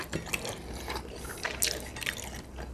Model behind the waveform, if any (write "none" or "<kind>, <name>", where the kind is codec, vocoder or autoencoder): none